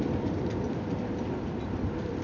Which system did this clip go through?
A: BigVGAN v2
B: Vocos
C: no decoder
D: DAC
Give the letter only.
A